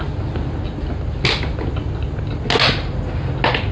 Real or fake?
real